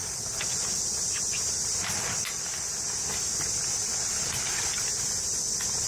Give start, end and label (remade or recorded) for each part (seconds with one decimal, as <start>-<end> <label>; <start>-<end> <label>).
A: 0.0-5.9 recorded